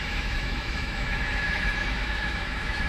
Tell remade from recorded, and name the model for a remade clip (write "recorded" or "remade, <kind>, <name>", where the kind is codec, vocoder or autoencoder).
remade, autoencoder, DAC-VAE